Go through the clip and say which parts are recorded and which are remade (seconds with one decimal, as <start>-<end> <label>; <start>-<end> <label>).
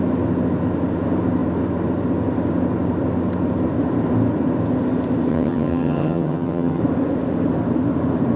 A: 0.0-5.3 recorded; 5.3-6.8 remade; 6.8-8.4 recorded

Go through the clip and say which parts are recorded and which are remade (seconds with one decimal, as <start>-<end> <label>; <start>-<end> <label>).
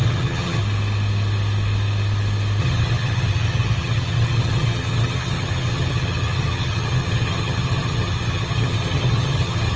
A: 0.0-0.6 remade; 0.6-2.6 recorded; 2.6-9.8 remade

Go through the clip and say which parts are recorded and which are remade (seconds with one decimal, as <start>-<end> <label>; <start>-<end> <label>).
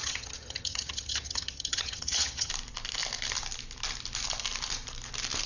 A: 0.0-2.5 remade; 2.5-5.5 recorded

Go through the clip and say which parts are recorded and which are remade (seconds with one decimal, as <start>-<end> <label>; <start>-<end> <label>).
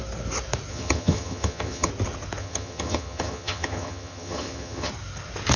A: 0.0-0.7 recorded; 0.7-1.9 remade; 1.9-2.4 recorded; 2.4-4.9 remade; 4.9-5.6 recorded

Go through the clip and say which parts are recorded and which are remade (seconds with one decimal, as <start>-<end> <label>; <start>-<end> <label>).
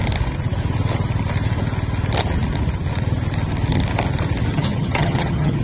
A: 0.0-4.5 recorded; 4.5-5.6 remade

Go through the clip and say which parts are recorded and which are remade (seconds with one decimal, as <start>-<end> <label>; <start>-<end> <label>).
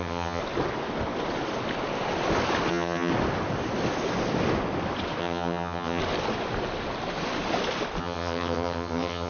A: 0.0-0.4 remade; 0.4-2.7 recorded; 2.7-3.1 remade; 3.1-5.2 recorded; 5.2-6.0 remade; 6.0-8.0 recorded; 8.0-9.3 remade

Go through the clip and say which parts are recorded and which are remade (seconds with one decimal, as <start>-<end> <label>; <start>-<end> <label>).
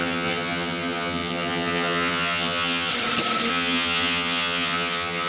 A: 0.0-2.9 remade; 2.9-3.5 recorded; 3.5-5.3 remade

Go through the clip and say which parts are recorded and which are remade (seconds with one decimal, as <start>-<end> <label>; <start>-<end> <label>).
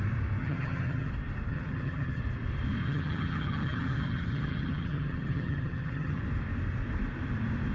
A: 0.0-0.4 recorded; 0.4-1.1 remade; 1.1-1.5 recorded; 1.5-2.2 remade; 2.2-2.8 recorded; 2.8-6.2 remade; 6.2-7.7 recorded